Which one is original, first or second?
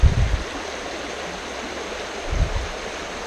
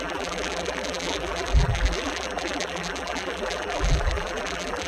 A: first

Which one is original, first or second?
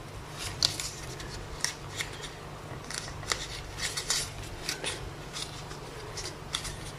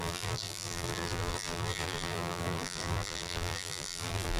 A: first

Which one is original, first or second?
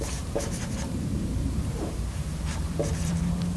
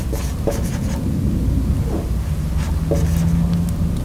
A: second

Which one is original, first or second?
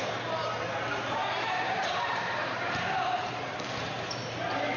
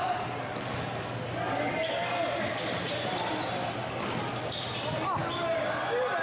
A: second